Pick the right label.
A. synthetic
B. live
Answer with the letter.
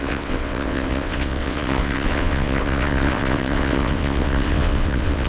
A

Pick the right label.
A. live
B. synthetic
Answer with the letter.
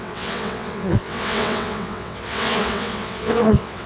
B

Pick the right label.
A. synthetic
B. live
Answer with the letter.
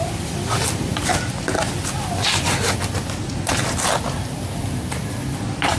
B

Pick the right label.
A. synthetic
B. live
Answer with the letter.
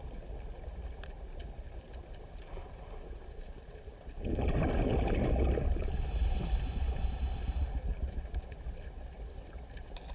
B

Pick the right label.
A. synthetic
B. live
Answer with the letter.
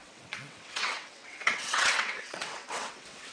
A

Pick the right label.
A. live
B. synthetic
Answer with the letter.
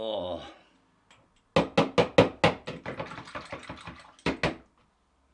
A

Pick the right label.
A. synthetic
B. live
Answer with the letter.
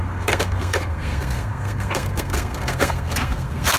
A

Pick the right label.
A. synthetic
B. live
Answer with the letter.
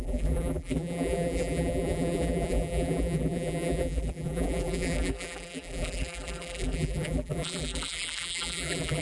A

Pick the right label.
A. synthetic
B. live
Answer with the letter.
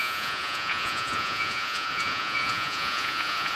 A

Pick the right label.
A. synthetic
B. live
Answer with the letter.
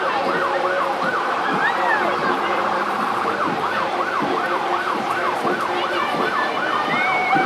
A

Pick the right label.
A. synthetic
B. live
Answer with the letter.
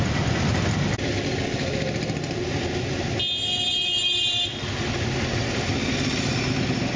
B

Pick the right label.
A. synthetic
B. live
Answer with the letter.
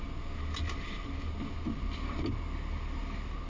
B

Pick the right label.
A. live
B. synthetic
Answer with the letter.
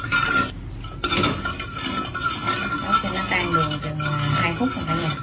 A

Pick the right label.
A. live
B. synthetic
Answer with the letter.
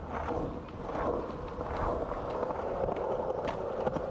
A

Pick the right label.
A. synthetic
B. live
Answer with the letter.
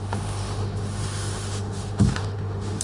A